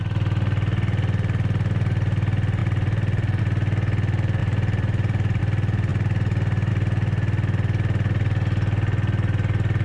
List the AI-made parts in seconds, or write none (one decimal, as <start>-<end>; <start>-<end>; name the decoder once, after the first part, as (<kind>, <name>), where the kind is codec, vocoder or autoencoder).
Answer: 2.6-3.4 (vocoder, BigVGAN v2); 4.4-5.4